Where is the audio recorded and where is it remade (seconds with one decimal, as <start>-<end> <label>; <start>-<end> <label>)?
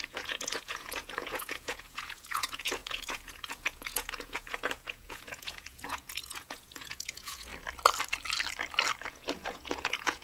0.0-7.5 remade; 7.5-9.1 recorded; 9.1-10.2 remade